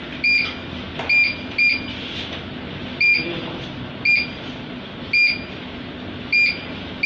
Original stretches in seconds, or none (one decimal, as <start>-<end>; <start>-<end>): 0.0-7.1